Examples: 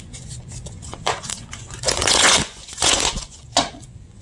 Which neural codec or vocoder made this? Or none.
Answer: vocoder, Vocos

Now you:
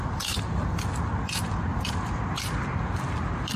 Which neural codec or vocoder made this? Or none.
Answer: none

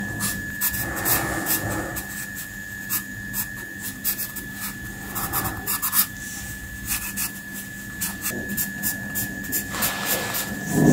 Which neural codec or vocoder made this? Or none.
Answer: none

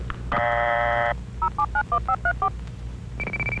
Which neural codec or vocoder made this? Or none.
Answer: none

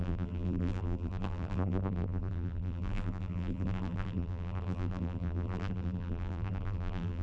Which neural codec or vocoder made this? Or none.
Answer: vocoder, BigVGAN v2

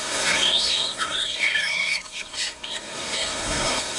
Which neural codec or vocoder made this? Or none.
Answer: codec, SNAC